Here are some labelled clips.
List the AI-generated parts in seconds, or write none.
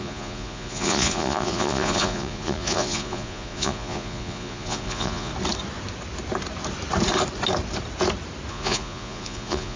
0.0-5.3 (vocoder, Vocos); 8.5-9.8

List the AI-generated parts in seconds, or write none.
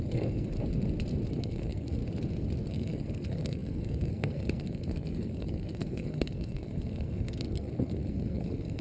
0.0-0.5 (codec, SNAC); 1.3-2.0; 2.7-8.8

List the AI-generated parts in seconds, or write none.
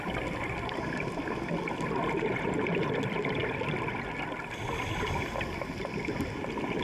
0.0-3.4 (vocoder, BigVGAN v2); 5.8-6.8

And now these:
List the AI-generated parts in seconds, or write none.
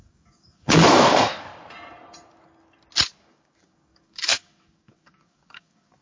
0.0-1.5 (codec, DAC); 3.2-6.0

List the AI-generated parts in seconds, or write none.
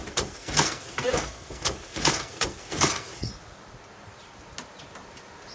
0.0-3.3 (codec, SNAC)